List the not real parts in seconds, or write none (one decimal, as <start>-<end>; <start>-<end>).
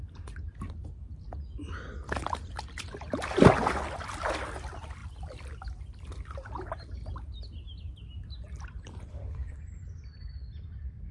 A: 9.1-9.6